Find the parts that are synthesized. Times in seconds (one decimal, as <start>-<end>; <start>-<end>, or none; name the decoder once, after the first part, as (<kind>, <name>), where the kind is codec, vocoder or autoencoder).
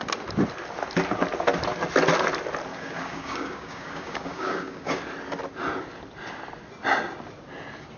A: 2.7-5.0 (codec, DAC)